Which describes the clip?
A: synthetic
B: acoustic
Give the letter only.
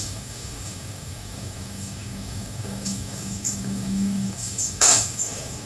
A